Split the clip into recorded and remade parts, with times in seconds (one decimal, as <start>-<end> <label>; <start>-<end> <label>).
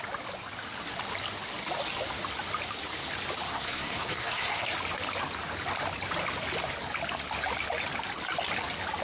0.0-3.5 recorded; 3.5-4.7 remade; 4.7-9.0 recorded